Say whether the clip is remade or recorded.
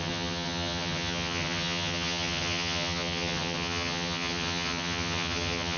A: remade